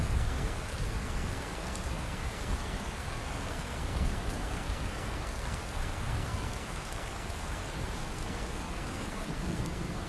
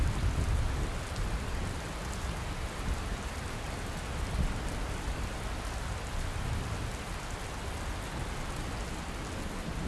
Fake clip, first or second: first